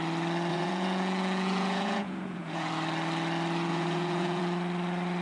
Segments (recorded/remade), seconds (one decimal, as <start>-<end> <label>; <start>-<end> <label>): 0.0-0.5 recorded; 0.5-2.7 remade; 2.7-3.7 recorded; 3.7-4.4 remade; 4.4-5.2 recorded